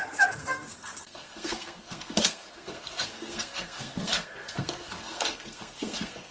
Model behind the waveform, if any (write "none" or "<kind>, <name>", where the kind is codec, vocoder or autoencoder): codec, SNAC